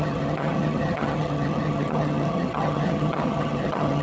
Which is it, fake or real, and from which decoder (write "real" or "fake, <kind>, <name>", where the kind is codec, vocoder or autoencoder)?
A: fake, vocoder, HiFi-GAN